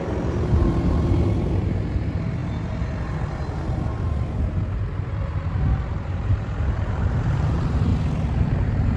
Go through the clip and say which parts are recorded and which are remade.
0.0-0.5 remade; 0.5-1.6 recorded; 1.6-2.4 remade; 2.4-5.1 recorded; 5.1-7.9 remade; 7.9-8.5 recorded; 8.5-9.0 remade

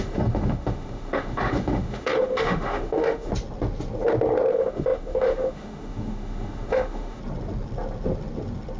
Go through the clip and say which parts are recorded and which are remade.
0.0-3.3 remade; 3.3-4.5 recorded; 4.5-7.2 remade; 7.2-8.8 recorded

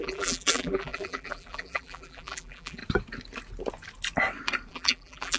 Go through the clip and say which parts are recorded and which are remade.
0.0-2.8 remade; 2.8-4.7 recorded; 4.7-5.4 remade

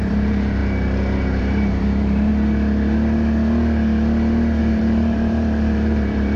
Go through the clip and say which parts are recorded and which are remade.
0.0-0.6 remade; 0.6-1.4 recorded; 1.4-2.3 remade; 2.3-4.6 recorded; 4.6-6.4 remade

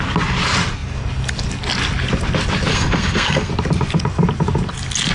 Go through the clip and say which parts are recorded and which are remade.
0.0-2.7 recorded; 2.7-3.5 remade; 3.5-5.1 recorded

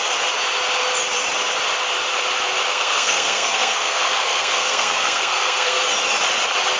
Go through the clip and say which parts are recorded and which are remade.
0.0-2.7 recorded; 2.7-5.8 remade; 5.8-6.8 recorded